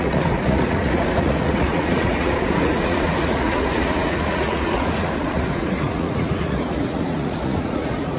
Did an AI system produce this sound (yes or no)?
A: yes